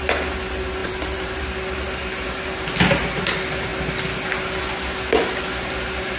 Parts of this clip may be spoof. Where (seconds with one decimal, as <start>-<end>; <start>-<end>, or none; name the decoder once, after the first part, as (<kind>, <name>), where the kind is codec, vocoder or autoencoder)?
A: 0.8-1.4 (vocoder, BigVGAN v2)

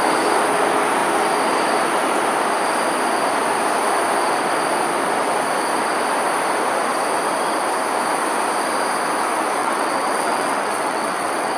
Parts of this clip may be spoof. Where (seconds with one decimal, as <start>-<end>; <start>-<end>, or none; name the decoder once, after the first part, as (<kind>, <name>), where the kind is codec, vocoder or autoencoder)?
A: 9.6-11.6 (vocoder, WaveNeXt)

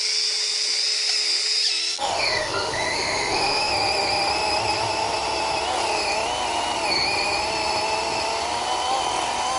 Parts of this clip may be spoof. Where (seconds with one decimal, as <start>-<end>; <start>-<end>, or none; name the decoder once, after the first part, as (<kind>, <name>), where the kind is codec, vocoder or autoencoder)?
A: 2.0-3.7 (autoencoder, DAC-VAE)

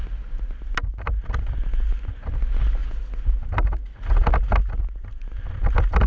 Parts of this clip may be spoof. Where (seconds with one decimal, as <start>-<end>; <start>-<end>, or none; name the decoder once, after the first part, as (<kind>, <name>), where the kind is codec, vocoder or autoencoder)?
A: none

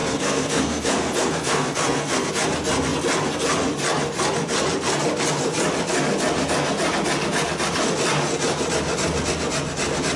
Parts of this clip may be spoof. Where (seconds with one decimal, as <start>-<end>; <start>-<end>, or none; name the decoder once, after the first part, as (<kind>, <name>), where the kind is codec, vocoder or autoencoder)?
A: 0.0-2.3 (codec, SNAC)

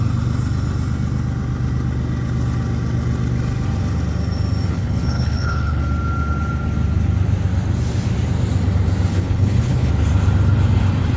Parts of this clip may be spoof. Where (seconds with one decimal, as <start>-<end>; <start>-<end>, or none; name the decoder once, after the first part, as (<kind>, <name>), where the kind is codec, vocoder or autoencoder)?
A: 4.7-5.8 (codec, HILCodec); 9.1-9.9

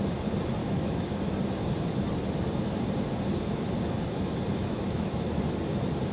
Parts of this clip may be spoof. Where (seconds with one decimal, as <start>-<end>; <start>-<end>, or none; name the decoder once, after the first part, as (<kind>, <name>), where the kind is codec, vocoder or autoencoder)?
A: 0.6-1.3 (autoencoder, DAC-VAE); 4.6-5.4

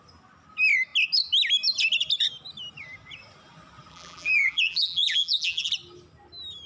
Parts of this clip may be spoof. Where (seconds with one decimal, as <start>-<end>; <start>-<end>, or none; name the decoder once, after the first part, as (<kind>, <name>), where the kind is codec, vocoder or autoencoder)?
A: 3.9-5.7 (vocoder, BigVGAN v2)